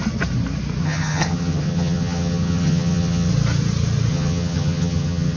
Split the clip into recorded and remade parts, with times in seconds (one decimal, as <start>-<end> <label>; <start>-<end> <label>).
0.0-0.8 recorded; 0.8-3.3 remade; 3.3-4.1 recorded; 4.1-5.4 remade